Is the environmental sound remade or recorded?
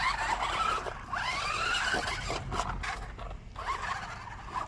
recorded